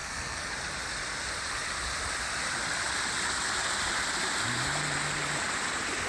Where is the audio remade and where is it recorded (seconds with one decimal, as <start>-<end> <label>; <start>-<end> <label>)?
0.0-0.5 remade; 0.5-6.1 recorded